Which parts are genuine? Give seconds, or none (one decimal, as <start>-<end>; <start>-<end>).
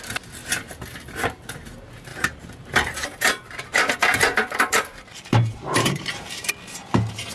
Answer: 0.0-2.1; 6.5-7.3